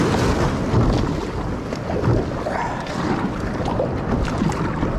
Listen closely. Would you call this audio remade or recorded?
recorded